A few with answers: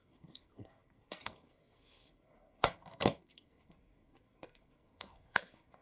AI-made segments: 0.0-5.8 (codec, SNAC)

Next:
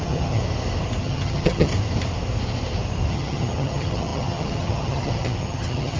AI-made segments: 0.0-0.4 (vocoder, HiFi-GAN); 1.0-1.7; 3.1-6.0

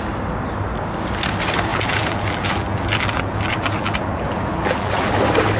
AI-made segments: 1.7-5.1 (vocoder, BigVGAN v2)

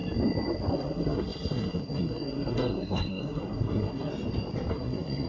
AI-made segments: 0.7-4.1 (codec, SNAC); 4.7-5.3

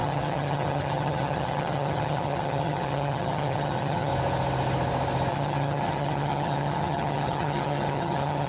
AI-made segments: 0.0-4.1 (vocoder, HiFi-GAN); 5.3-8.5

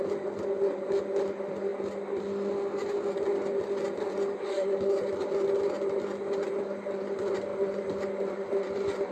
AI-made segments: none